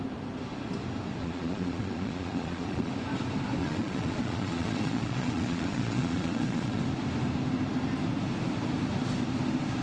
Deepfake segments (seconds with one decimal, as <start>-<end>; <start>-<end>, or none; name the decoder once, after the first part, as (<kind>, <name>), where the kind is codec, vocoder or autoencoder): 1.2-2.9 (vocoder, Vocos); 3.6-6.8